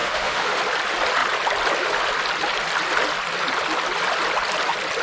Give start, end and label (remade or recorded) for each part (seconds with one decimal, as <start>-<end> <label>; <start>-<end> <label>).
0.0-0.6 remade; 0.6-5.0 recorded